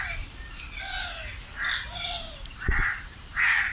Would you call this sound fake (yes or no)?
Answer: no